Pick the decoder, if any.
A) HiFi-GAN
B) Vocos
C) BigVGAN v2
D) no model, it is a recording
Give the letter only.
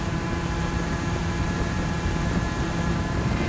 C